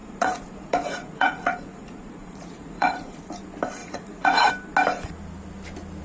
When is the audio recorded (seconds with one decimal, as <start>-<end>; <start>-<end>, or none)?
3.2-3.8; 4.5-6.0